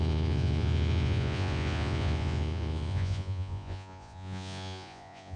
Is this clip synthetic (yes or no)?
yes